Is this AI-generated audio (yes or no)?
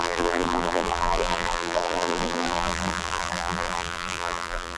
yes